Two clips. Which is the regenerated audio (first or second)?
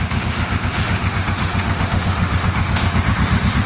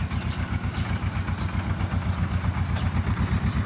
first